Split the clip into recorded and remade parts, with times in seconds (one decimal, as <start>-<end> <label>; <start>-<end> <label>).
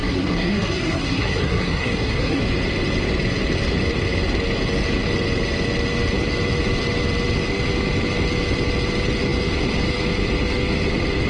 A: 0.0-2.4 remade; 2.4-11.3 recorded